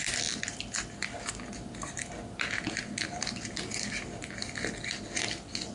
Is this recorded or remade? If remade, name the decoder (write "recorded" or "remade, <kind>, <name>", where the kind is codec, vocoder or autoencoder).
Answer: recorded